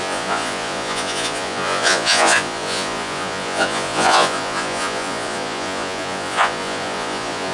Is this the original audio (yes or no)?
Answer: no